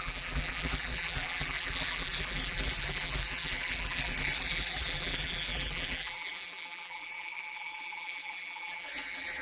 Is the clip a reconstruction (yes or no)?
yes